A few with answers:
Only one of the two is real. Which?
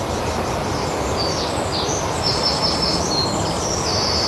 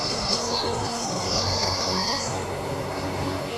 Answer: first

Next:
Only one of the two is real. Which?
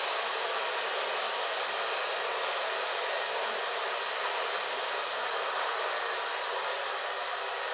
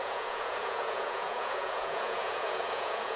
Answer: first